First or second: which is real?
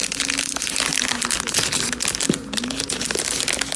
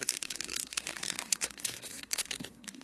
first